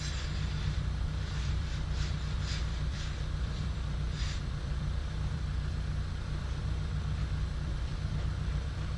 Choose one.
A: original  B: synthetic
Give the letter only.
B